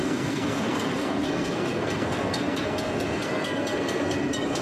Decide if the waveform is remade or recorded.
remade